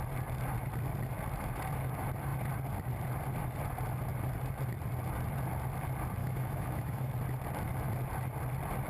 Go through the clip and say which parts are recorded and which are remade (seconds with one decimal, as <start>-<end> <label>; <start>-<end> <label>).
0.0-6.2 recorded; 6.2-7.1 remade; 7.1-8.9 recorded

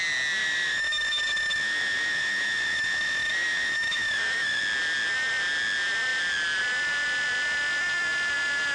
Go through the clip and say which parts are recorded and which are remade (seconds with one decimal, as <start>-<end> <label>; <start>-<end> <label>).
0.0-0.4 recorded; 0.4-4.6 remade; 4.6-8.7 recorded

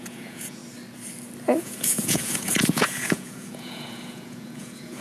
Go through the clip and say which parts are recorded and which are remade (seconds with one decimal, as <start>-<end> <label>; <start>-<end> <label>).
0.0-0.6 remade; 0.6-1.6 recorded; 1.6-5.0 remade

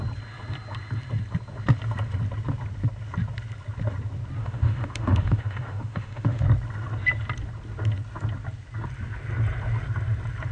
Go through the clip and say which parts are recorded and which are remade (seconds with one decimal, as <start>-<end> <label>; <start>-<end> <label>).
0.0-4.4 recorded; 4.4-6.4 remade; 6.4-10.5 recorded

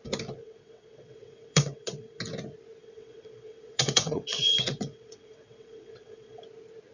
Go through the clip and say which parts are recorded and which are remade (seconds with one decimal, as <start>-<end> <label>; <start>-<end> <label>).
0.0-0.4 recorded; 0.4-2.2 remade; 2.2-2.8 recorded; 2.8-6.4 remade; 6.4-6.9 recorded

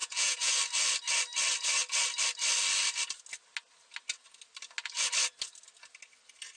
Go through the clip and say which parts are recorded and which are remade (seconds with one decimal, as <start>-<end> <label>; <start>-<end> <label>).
0.0-0.5 remade; 0.5-6.6 recorded